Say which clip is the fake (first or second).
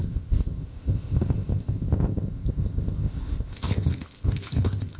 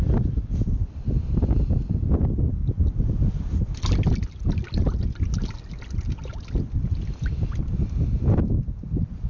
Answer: first